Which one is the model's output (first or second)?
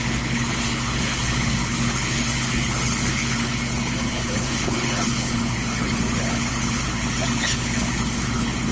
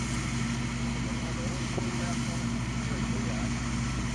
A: first